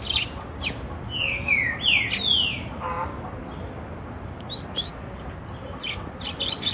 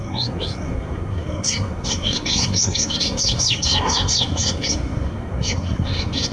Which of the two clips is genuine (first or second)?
first